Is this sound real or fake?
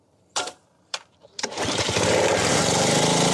fake